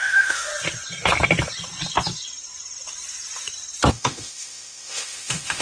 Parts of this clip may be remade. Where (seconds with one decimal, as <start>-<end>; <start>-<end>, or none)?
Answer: 0.0-0.5; 3.9-5.6